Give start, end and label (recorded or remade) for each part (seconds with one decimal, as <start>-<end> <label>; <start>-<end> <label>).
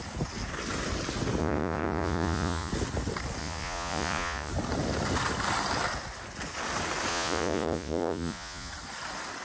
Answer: 0.0-1.4 recorded; 1.4-2.7 remade; 2.7-3.4 recorded; 3.4-4.5 remade; 4.5-7.1 recorded; 7.1-8.7 remade; 8.7-9.4 recorded